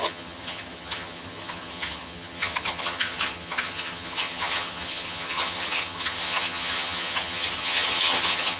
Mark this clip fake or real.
fake